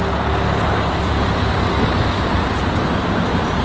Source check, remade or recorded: recorded